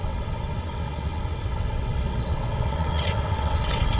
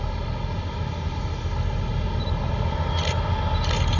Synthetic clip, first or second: first